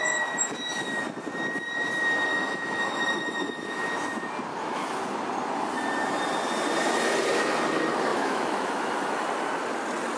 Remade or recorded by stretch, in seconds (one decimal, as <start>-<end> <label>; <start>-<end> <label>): 0.0-2.3 recorded; 2.3-3.9 remade; 3.9-4.5 recorded; 4.5-5.0 remade; 5.0-8.1 recorded; 8.1-9.0 remade; 9.0-10.2 recorded